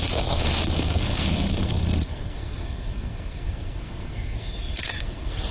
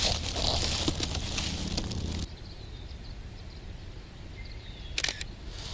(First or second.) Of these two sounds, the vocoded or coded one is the first